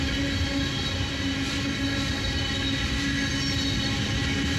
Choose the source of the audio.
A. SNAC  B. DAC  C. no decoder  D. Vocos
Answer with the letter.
C